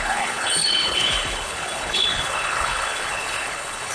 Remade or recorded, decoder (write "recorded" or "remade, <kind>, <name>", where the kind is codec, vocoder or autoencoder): remade, codec, HILCodec